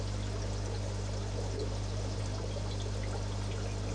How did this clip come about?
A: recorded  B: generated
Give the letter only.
A